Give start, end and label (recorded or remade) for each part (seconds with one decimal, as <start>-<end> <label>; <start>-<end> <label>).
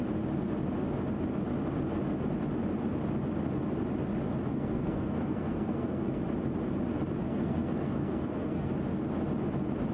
0.0-4.5 recorded; 4.5-6.2 remade; 6.2-7.2 recorded; 7.2-8.7 remade; 8.7-9.9 recorded